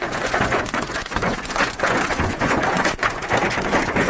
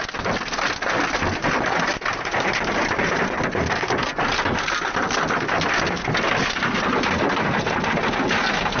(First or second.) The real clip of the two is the second